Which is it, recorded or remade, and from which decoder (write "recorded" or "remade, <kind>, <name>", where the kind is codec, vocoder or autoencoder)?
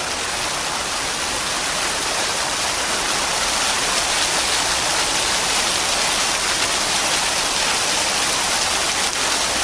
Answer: recorded